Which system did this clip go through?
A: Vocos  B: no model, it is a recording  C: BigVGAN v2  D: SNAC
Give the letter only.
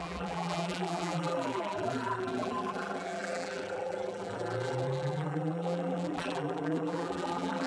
C